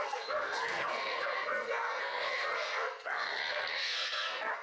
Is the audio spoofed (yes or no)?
yes